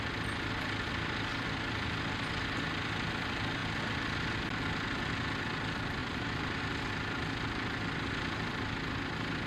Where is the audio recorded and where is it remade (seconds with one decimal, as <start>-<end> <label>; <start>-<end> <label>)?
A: 0.0-6.0 recorded; 6.0-6.6 remade; 6.6-9.5 recorded